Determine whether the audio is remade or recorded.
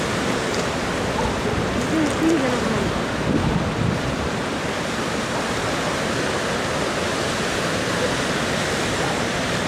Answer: recorded